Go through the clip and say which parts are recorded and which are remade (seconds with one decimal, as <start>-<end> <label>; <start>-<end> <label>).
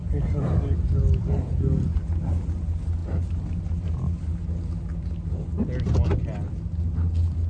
0.0-7.5 recorded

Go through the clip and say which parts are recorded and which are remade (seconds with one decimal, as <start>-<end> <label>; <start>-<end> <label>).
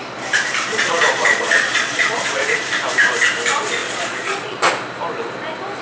0.0-0.7 recorded; 0.7-2.6 remade; 2.6-3.8 recorded; 3.8-4.7 remade; 4.7-5.8 recorded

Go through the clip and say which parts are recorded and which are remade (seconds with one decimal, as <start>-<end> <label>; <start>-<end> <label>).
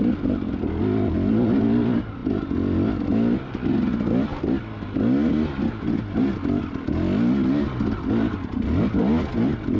0.0-9.8 recorded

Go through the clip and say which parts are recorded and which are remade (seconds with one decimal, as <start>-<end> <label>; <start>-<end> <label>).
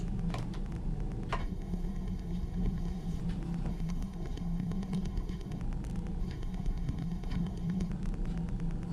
0.0-1.4 recorded; 1.4-3.2 remade; 3.2-3.7 recorded; 3.7-5.6 remade; 5.6-6.2 recorded; 6.2-7.9 remade; 7.9-8.9 recorded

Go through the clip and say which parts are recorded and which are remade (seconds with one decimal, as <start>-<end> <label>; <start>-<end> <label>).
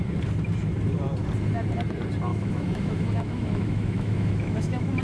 0.0-2.3 recorded; 2.3-5.0 remade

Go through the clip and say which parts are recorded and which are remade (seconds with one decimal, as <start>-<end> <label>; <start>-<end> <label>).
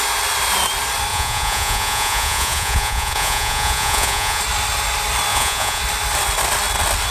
0.0-1.1 recorded; 1.1-4.4 remade; 4.4-5.3 recorded; 5.3-5.8 remade; 5.8-7.1 recorded